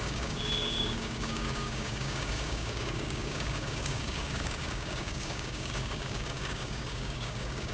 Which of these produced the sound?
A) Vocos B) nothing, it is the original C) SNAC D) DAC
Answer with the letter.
D